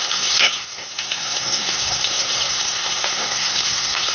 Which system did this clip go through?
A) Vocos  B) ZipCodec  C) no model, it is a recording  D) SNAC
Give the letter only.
D